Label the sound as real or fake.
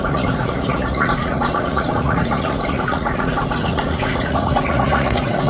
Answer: fake